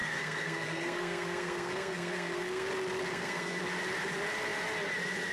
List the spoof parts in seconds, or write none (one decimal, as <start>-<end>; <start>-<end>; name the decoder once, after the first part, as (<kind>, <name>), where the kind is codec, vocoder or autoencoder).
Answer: 0.0-2.7 (codec, SNAC); 3.1-3.6